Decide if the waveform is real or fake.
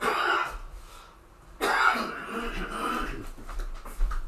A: real